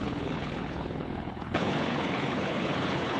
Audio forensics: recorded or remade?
remade